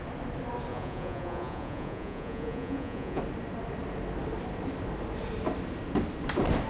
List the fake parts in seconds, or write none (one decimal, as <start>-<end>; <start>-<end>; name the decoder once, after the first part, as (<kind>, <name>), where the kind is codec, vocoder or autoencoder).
0.7-3.2 (vocoder, Vocos)